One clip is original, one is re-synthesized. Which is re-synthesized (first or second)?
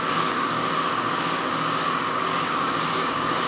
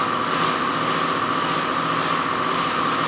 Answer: first